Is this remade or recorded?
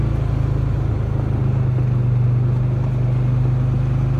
recorded